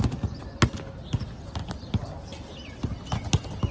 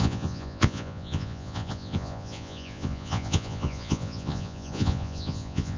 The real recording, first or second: first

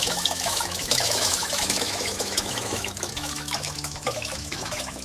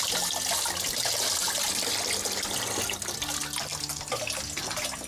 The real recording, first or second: second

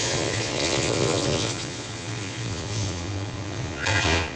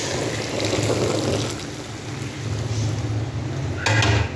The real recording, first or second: second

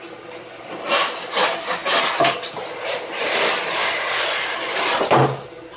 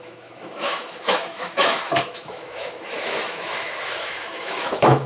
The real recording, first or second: first